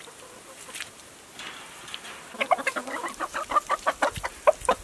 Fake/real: real